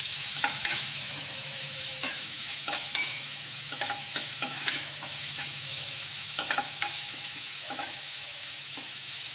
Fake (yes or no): yes